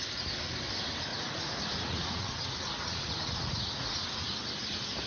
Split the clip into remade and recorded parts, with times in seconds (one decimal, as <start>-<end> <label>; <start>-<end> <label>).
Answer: 0.0-1.1 recorded; 1.1-4.2 remade; 4.2-5.1 recorded